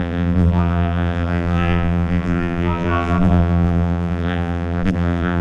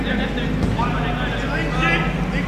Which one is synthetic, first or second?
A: first